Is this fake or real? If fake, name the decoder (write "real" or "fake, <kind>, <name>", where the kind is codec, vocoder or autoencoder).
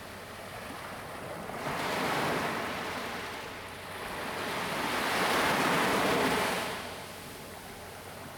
real